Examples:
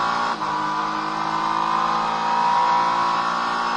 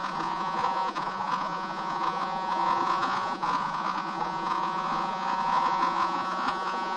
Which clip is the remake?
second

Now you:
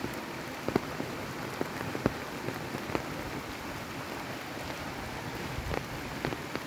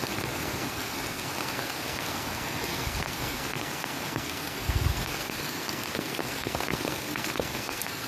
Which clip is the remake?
second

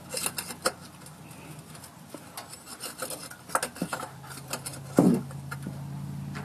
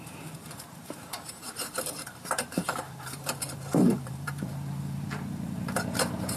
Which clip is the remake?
second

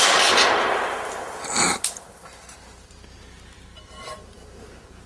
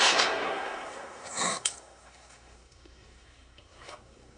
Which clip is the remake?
second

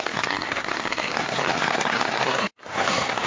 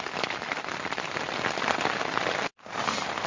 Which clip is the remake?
first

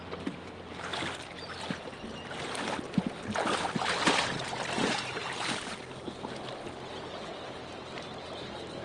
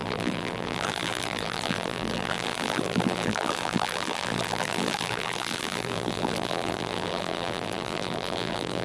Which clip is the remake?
second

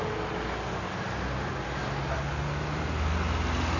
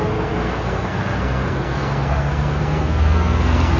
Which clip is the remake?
second